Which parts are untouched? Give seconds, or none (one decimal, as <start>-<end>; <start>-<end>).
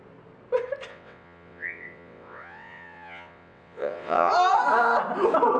0.0-0.9; 4.3-5.6